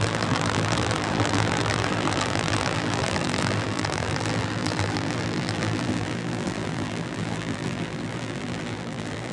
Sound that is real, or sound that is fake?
fake